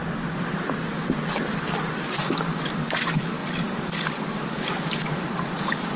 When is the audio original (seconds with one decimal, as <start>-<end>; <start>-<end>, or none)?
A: 0.0-1.9